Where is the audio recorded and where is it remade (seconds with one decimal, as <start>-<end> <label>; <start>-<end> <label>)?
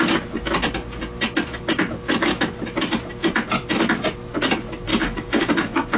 0.0-4.9 recorded; 4.9-6.0 remade